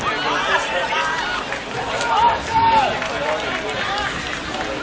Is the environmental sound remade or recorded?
recorded